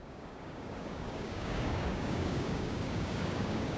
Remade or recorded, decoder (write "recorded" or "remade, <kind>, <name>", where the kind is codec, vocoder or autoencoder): remade, codec, DAC